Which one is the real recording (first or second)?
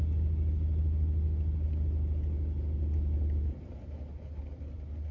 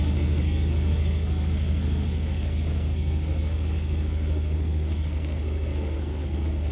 first